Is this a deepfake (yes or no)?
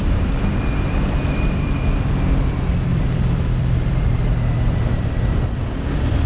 yes